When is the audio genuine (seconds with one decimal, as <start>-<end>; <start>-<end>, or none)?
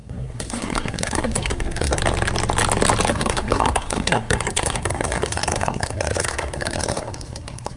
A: 2.0-3.1